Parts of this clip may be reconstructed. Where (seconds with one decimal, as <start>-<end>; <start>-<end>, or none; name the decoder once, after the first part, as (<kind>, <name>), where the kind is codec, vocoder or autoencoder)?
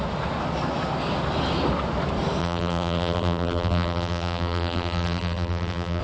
2.4-6.0 (vocoder, BigVGAN v2)